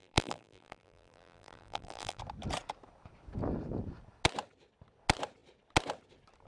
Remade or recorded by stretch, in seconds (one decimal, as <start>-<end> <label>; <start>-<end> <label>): 0.0-2.2 remade; 2.2-6.5 recorded